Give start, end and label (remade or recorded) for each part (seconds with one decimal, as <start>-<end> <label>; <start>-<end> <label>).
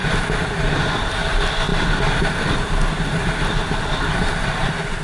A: 0.0-5.0 recorded